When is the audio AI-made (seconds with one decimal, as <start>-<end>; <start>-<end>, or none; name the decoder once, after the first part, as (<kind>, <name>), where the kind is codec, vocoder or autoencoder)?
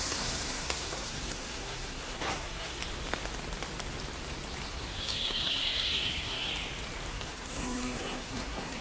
0.0-2.8 (codec, SNAC); 4.7-6.5; 7.1-8.8